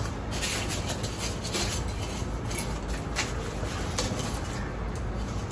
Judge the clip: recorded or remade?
recorded